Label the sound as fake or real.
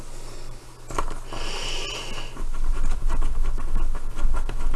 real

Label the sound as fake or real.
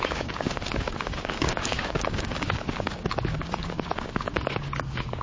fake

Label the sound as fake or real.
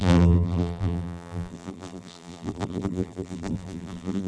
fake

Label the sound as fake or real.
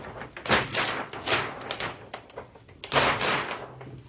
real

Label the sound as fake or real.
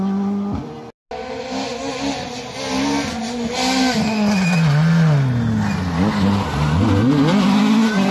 real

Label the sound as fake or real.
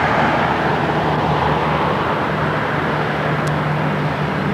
real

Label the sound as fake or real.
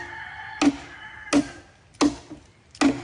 real